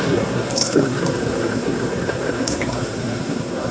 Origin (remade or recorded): remade